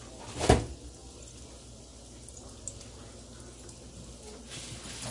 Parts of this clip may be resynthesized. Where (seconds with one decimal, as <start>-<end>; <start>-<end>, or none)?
none